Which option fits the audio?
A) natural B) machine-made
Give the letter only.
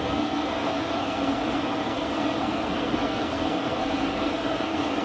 B